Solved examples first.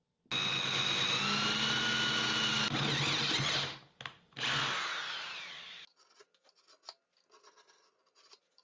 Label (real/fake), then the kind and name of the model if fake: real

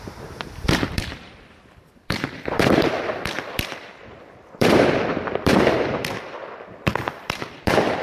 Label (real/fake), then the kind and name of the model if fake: fake, vocoder, BigVGAN v2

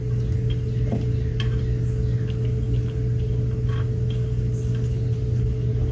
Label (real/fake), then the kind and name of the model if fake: real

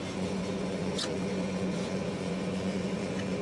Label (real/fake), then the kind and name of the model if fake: fake, vocoder, Vocos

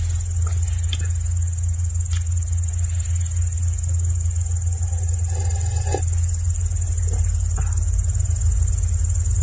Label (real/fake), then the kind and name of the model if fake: real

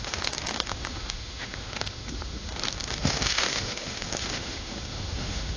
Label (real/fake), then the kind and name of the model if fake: fake, autoencoder, DAC-VAE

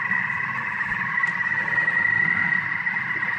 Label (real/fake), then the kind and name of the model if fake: real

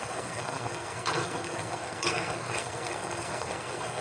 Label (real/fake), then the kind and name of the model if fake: fake, codec, SNAC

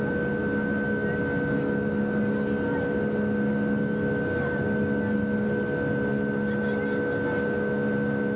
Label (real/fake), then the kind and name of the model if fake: real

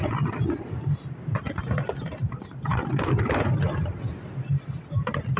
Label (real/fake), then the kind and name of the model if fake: real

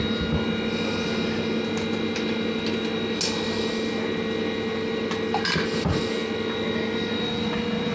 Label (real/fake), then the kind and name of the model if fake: real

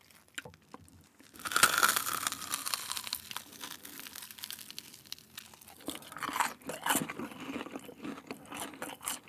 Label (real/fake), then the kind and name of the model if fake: real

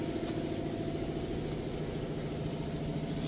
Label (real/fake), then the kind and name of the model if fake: real